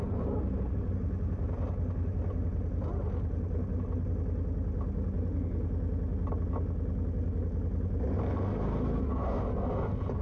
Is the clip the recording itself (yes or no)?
yes